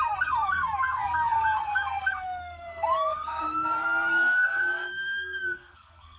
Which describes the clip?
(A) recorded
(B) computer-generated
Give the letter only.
B